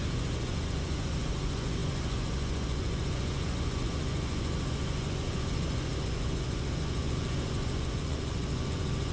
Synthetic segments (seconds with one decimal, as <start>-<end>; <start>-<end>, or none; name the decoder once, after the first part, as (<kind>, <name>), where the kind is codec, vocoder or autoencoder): 0.0-9.1 (vocoder, Vocos)

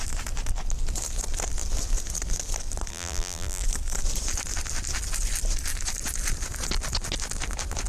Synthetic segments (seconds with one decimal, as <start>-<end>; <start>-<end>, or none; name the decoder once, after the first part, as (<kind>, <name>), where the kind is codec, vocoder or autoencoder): 2.9-3.6 (vocoder, BigVGAN v2)

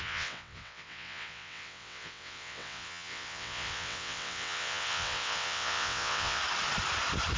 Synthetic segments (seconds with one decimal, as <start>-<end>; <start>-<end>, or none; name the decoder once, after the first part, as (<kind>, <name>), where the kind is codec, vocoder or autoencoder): 0.0-6.4 (vocoder, WaveNeXt)